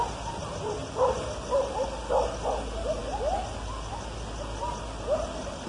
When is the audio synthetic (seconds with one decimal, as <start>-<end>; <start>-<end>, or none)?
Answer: none